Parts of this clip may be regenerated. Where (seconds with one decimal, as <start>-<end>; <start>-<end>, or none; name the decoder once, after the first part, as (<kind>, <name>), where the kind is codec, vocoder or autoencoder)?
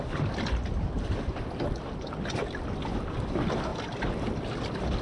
none